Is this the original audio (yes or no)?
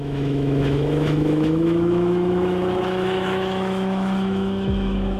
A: no